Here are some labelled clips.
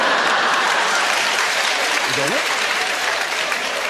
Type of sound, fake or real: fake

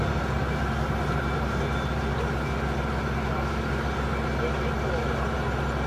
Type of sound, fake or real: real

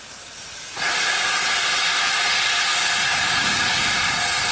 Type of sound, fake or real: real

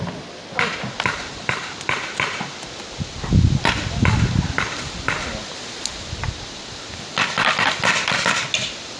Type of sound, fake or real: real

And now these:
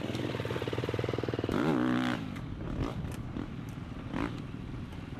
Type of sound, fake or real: real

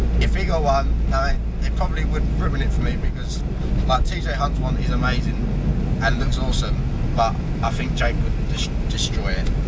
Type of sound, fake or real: real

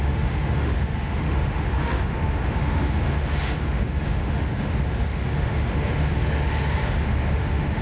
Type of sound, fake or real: fake